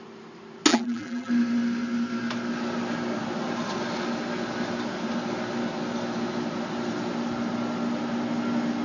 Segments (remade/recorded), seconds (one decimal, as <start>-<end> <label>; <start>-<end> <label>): 0.0-0.7 recorded; 0.7-1.3 remade; 1.3-8.8 recorded